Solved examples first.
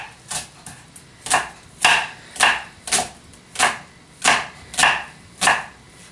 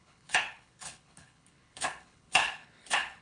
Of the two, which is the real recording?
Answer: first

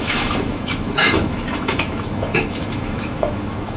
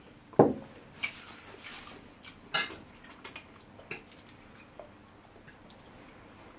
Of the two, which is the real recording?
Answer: second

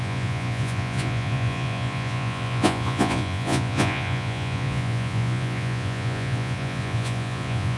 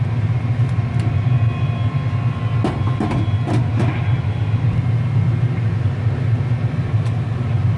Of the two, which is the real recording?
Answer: second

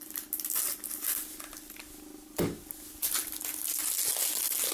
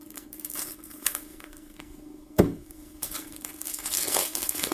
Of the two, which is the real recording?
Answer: first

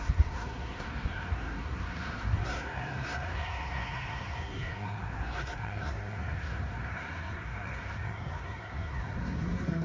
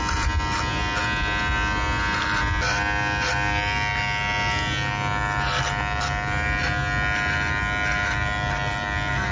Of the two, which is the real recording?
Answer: second